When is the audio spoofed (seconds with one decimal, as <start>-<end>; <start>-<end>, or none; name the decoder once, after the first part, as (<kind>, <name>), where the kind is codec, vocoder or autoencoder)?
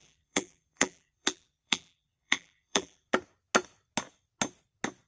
0.0-3.1 (vocoder, BigVGAN v2)